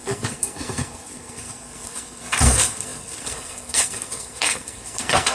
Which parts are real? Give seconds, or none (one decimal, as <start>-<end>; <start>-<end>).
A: none